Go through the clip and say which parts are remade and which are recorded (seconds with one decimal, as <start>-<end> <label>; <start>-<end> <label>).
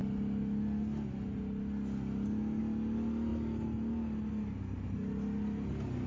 0.0-6.1 recorded